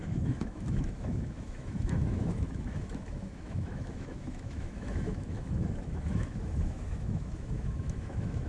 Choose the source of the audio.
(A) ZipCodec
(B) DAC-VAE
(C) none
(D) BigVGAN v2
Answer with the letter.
B